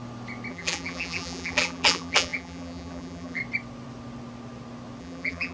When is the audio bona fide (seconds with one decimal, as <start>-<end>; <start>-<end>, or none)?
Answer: 0.0-0.5; 3.4-5.0